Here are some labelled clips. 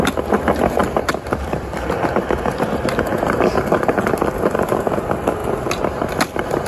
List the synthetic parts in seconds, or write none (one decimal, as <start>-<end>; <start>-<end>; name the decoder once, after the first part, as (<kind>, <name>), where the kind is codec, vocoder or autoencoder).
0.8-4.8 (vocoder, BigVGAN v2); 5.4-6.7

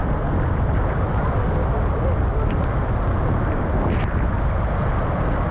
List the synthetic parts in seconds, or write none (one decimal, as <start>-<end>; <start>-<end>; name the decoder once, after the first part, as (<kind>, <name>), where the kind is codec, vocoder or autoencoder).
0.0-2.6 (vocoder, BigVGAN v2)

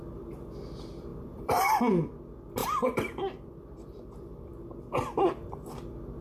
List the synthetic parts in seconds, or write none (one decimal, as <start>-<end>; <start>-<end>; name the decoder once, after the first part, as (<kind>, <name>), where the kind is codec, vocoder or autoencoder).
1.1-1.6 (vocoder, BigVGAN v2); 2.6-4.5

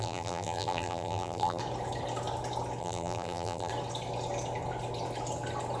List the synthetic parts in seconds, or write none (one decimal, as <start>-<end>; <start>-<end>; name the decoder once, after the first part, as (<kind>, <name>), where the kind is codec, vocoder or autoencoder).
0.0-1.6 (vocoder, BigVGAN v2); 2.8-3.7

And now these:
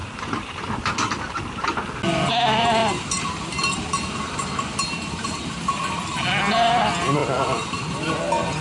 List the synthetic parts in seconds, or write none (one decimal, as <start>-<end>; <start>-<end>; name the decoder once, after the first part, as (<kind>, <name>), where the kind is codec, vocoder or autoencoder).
0.0-0.6 (vocoder, BigVGAN v2); 2.8-6.0; 7.2-8.2

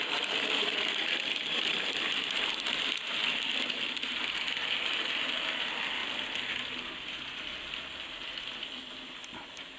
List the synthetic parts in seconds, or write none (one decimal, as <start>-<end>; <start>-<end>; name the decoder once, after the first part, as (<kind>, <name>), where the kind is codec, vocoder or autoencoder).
0.6-2.5 (vocoder, BigVGAN v2)

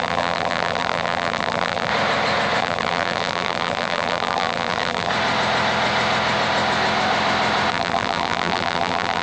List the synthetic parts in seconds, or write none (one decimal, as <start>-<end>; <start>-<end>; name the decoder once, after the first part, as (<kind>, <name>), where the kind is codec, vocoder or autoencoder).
0.0-1.9 (vocoder, BigVGAN v2); 2.6-5.1; 7.7-9.2